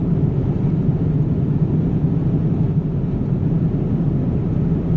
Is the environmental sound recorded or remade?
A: recorded